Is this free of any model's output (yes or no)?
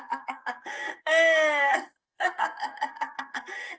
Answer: no